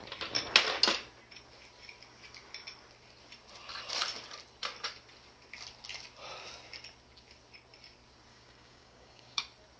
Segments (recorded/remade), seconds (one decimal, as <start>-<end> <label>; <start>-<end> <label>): 0.0-8.3 recorded; 8.3-9.4 remade; 9.4-9.8 recorded